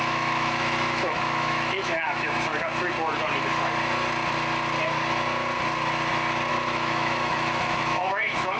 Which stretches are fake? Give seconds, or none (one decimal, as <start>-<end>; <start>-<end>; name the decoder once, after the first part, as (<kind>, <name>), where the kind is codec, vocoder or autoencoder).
0.0-2.5 (autoencoder, DAC-VAE); 6.5-8.6